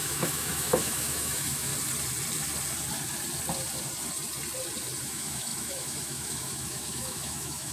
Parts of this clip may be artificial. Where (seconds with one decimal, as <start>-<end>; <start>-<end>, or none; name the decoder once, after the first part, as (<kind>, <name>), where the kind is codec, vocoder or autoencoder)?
0.0-1.7 (autoencoder, DAC-VAE); 5.0-7.7